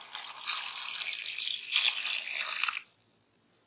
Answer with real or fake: real